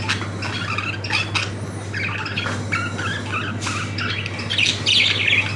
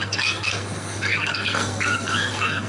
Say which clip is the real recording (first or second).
first